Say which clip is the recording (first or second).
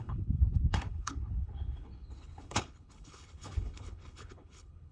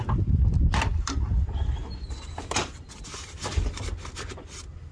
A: second